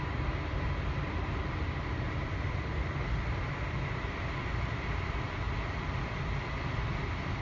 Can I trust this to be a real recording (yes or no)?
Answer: yes